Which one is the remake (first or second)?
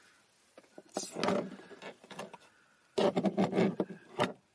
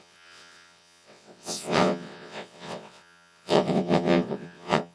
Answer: second